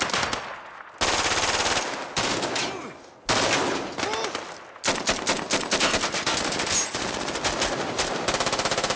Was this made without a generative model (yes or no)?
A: yes